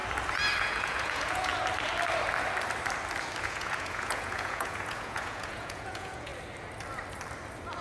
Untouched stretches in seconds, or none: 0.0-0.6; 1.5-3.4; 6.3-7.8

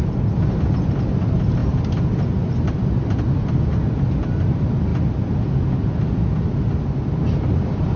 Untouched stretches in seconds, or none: 0.0-8.0

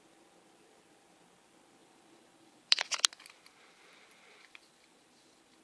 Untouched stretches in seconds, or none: 0.0-1.8

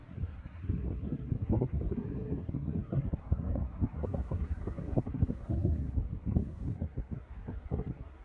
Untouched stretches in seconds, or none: none

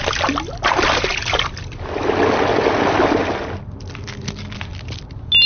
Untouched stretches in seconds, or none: 0.0-5.5